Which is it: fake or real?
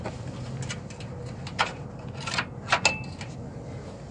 real